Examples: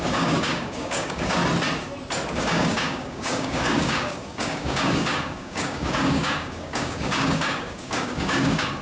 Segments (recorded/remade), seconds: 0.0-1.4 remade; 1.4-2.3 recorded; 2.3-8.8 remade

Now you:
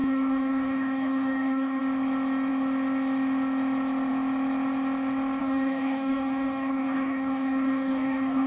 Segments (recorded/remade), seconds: 0.0-1.8 remade; 1.8-5.4 recorded; 5.4-8.5 remade